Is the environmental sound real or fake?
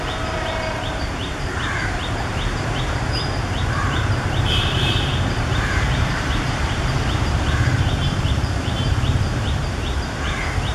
fake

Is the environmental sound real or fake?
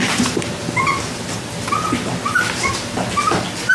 real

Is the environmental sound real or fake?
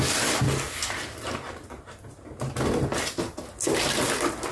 real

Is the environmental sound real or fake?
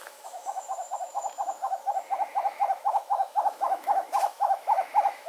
fake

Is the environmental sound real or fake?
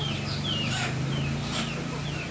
real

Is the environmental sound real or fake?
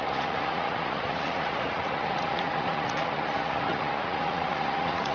fake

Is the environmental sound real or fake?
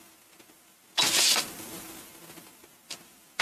real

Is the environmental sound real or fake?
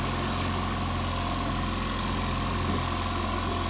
real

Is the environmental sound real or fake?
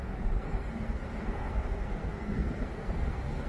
fake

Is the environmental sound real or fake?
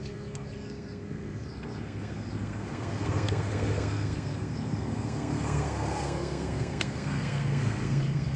fake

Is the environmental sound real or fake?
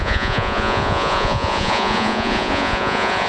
fake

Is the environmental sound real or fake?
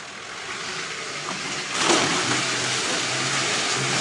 real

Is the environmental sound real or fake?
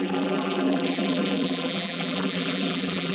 fake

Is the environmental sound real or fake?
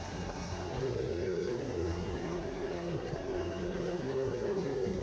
fake